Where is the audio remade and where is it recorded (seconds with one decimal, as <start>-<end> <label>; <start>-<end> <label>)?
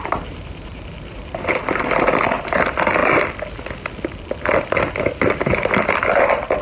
0.0-1.6 remade; 1.6-6.6 recorded